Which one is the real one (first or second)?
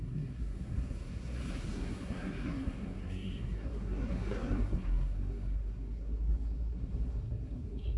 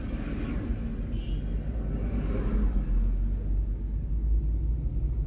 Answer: second